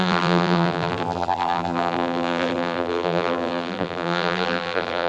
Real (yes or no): no